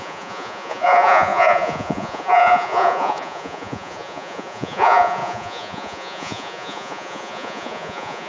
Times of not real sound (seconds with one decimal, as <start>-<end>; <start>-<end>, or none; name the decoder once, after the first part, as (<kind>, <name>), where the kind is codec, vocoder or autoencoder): 0.0-8.3 (vocoder, Vocos)